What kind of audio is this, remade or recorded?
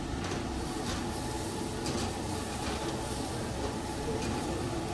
recorded